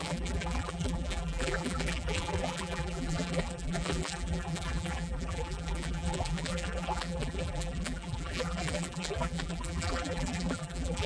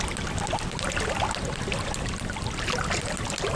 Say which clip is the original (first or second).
second